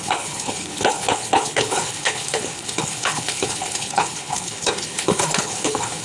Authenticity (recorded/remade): remade